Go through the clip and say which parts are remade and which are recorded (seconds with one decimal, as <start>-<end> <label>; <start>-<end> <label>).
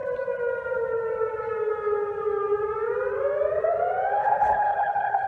0.0-4.2 recorded; 4.2-5.3 remade